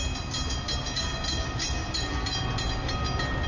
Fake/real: real